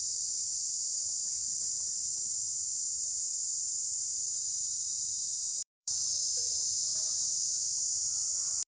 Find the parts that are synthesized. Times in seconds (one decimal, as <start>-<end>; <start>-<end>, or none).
0.0-2.1; 5.2-6.9; 7.8-8.7